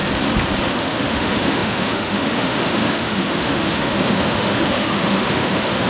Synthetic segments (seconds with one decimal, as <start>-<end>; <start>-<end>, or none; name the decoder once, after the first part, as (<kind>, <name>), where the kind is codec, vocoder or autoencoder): 0.7-5.9 (autoencoder, DAC-VAE)